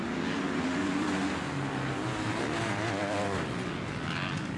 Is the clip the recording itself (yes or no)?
yes